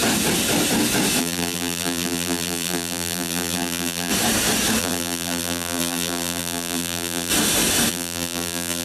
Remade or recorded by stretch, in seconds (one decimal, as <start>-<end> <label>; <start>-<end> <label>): 0.0-1.2 recorded; 1.2-4.1 remade; 4.1-4.8 recorded; 4.8-7.3 remade; 7.3-7.9 recorded; 7.9-8.8 remade